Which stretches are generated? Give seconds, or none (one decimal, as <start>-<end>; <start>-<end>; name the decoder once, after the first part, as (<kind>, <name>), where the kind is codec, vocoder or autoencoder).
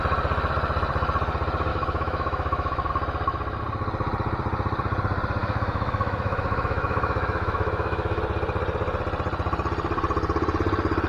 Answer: 1.7-2.9 (autoencoder, DAC-VAE); 5.4-8.2